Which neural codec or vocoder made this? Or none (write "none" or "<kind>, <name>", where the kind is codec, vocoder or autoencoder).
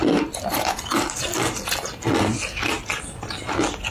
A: none